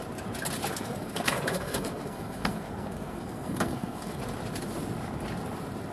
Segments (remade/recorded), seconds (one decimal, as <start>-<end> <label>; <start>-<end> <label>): 0.0-0.7 recorded; 0.7-4.2 remade; 4.2-5.9 recorded